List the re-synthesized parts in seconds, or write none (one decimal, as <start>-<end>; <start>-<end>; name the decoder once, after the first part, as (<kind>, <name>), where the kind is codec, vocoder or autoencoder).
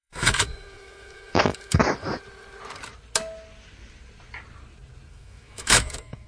0.0-1.8 (autoencoder, DAC-VAE); 5.1-6.3